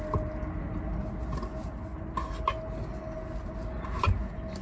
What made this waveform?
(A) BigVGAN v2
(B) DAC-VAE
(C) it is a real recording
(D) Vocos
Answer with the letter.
C